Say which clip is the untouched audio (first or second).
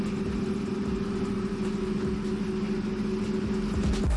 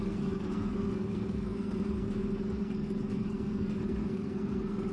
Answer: first